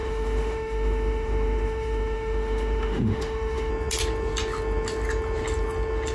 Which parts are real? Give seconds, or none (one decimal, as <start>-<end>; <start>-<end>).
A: 3.7-6.1